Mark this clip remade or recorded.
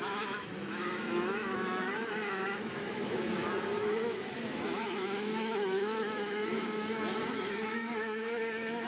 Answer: remade